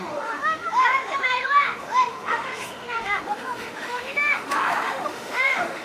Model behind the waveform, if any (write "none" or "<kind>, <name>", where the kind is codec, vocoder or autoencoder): autoencoder, DAC-VAE